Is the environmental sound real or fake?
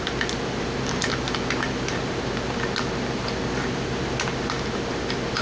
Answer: real